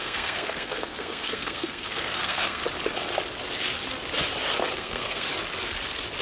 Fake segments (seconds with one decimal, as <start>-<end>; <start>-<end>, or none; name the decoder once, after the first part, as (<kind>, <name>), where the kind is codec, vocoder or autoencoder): 0.0-2.6 (codec, SNAC); 4.7-5.3